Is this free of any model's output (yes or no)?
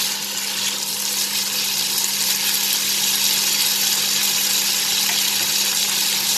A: yes